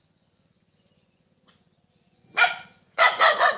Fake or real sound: fake